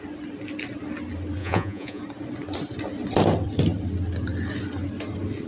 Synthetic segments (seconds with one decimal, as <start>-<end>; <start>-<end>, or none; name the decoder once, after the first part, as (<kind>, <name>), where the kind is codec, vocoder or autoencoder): 1.4-2.0 (vocoder, Vocos)